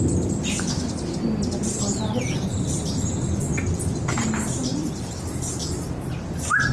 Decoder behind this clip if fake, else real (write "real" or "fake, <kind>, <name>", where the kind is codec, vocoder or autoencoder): real